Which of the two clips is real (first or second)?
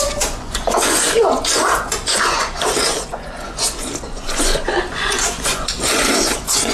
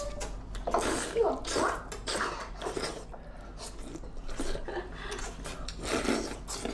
second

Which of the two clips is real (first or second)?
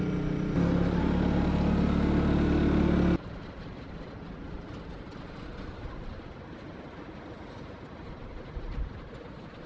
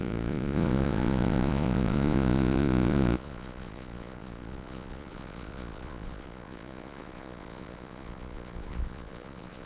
first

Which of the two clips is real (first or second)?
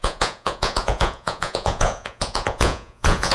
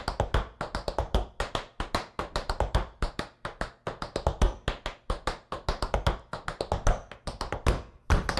second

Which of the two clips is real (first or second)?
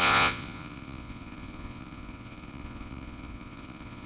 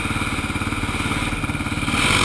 second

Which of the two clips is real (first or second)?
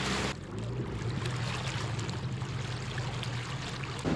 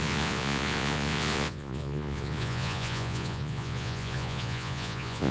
first